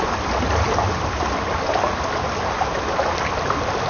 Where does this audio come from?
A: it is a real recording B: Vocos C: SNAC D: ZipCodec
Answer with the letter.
A